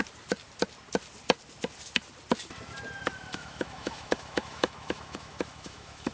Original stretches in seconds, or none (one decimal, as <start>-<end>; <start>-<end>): 0.0-3.3